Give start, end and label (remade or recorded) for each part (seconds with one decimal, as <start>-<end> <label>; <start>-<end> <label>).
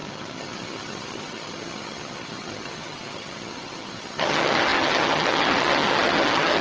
0.0-6.6 remade